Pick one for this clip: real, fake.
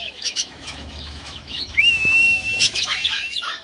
fake